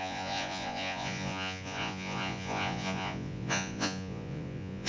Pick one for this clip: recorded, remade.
remade